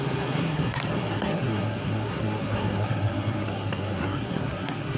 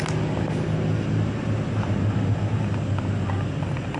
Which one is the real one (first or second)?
second